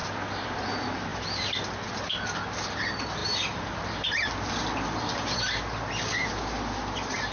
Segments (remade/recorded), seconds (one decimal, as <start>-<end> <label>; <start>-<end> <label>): 0.0-0.6 remade; 0.6-1.1 recorded; 1.1-1.9 remade; 1.9-3.2 recorded; 3.2-5.4 remade; 5.4-7.3 recorded